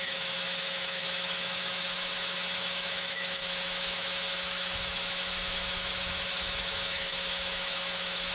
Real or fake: fake